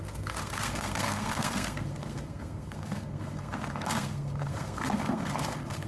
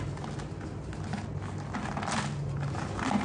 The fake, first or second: first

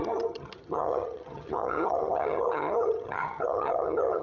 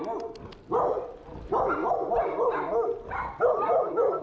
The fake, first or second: first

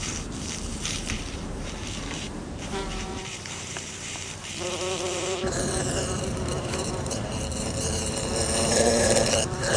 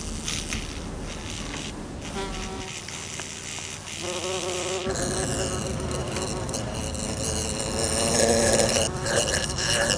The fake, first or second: first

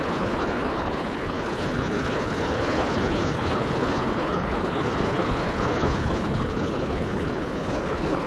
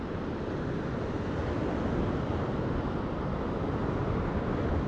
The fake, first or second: first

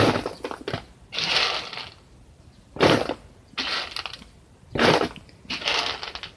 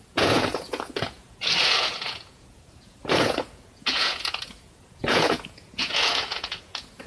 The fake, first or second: second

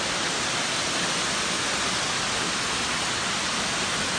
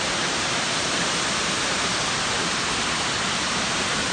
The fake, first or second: second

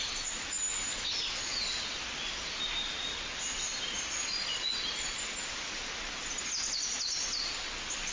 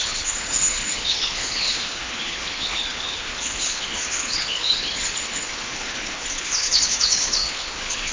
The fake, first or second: second